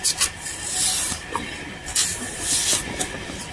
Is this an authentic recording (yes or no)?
yes